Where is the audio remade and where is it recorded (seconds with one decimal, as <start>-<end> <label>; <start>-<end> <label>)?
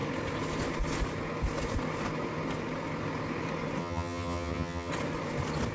0.0-3.8 recorded; 3.8-4.9 remade; 4.9-5.7 recorded